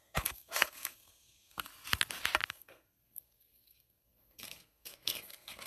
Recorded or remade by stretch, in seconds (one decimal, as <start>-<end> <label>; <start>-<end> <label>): 0.0-1.7 remade; 1.7-2.5 recorded; 2.5-5.7 remade